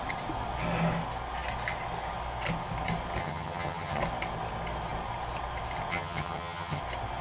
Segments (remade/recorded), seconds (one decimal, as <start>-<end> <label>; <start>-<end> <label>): 0.0-3.2 recorded; 3.2-4.0 remade; 4.0-5.9 recorded; 5.9-6.8 remade; 6.8-7.2 recorded